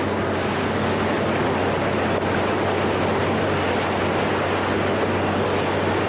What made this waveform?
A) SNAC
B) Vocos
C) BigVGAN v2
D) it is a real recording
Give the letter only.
D